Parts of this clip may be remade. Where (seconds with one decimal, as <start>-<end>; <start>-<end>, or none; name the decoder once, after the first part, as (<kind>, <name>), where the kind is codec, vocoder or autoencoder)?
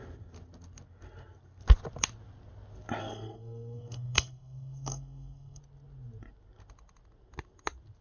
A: 3.0-5.6 (codec, SNAC)